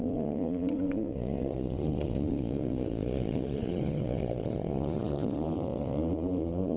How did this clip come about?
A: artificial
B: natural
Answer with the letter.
A